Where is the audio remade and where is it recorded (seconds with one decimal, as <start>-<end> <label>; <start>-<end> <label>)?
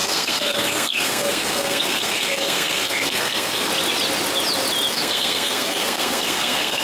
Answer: 0.0-3.7 remade; 3.7-4.9 recorded; 4.9-6.8 remade